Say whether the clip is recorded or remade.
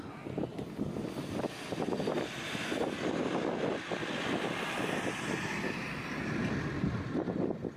recorded